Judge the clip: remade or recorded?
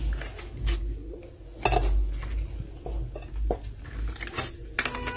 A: recorded